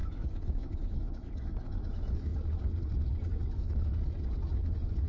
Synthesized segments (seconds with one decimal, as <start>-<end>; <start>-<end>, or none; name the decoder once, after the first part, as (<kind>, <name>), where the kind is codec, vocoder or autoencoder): 0.0-2.3 (autoencoder, DAC-VAE); 3.5-3.9